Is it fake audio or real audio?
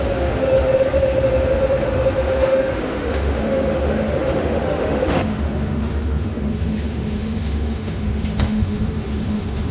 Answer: fake